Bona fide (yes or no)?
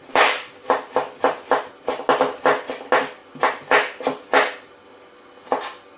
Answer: yes